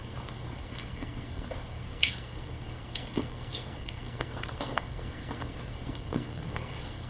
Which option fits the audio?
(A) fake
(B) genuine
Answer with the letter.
A